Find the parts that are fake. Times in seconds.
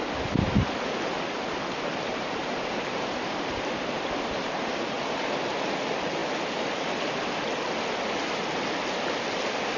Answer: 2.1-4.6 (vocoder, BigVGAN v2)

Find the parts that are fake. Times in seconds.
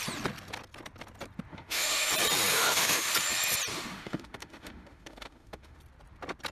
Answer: 1.5-2.1 (autoencoder, DAC-VAE); 2.5-3.1; 3.7-5.8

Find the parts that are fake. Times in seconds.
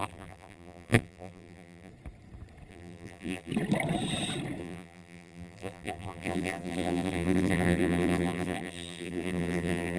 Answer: 0.0-1.9 (vocoder, BigVGAN v2); 2.7-3.5; 4.6-10.0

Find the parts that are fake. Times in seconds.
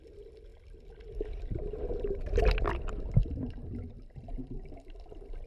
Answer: 3.2-4.7 (vocoder, BigVGAN v2)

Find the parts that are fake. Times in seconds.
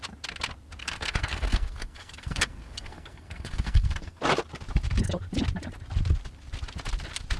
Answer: 0.8-4.2 (codec, SNAC)